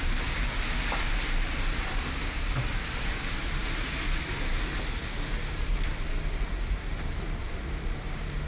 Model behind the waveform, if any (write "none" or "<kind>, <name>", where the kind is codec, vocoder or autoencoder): vocoder, BigVGAN v2